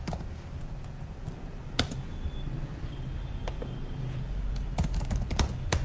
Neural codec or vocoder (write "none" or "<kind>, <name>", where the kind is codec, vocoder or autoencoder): none